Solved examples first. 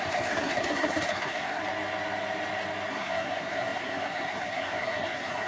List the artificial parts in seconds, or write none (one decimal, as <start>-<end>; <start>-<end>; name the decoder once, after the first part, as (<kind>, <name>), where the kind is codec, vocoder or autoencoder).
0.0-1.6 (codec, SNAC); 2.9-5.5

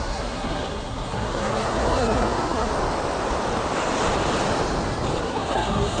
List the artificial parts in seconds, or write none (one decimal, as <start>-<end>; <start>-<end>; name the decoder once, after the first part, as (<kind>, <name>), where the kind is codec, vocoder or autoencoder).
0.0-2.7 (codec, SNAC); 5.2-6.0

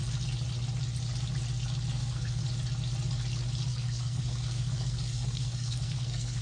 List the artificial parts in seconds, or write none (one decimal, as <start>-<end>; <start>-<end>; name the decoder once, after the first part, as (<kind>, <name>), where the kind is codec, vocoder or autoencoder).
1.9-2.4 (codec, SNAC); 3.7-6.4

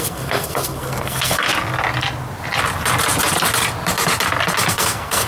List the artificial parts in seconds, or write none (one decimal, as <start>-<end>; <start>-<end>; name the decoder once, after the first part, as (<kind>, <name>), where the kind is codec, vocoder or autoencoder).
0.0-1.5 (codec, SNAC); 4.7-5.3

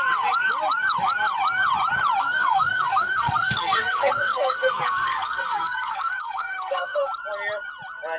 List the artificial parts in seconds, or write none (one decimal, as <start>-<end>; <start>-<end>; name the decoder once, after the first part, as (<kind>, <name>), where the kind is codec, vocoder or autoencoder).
2.2-7.1 (codec, SNAC)

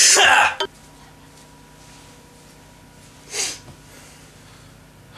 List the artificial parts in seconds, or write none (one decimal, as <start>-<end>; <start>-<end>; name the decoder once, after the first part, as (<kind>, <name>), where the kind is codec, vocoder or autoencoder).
none